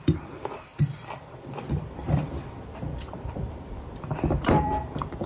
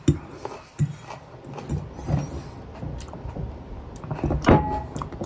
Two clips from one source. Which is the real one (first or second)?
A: second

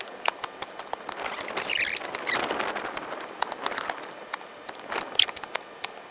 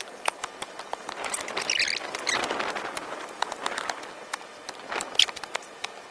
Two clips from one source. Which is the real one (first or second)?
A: second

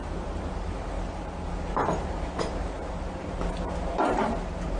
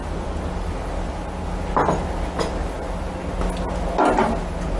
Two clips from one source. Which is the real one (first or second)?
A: second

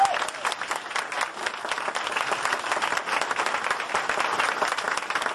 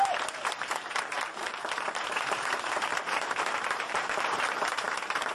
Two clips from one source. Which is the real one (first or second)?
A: first